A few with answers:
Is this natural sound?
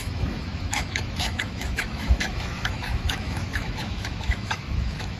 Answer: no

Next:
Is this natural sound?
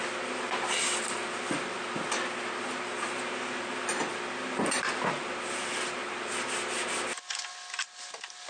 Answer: yes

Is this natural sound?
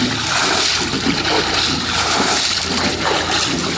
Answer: yes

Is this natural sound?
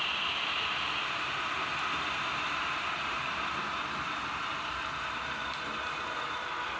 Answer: yes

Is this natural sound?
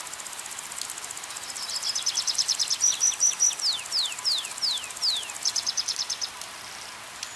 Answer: yes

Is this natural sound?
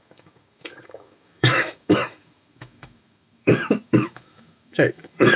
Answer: no